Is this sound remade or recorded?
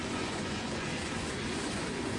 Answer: remade